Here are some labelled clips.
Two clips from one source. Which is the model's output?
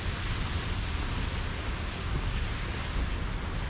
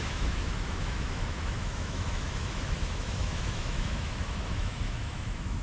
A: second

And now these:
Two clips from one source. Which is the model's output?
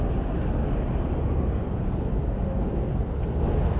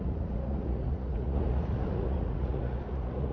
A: second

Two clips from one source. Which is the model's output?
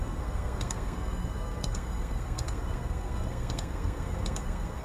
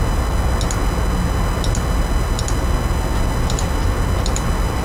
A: first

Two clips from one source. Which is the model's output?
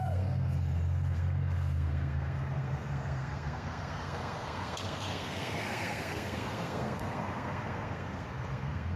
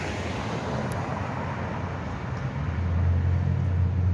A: first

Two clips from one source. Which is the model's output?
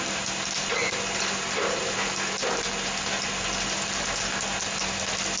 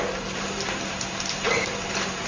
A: second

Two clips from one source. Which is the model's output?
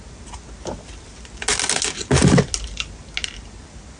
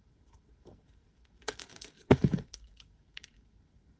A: second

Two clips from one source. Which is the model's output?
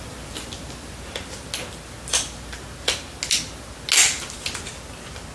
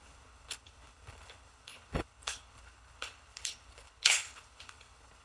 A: second